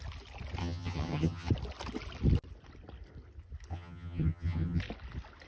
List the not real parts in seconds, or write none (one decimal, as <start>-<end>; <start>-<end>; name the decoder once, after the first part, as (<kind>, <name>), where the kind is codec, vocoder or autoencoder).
0.6-1.5 (vocoder, HiFi-GAN); 3.7-4.8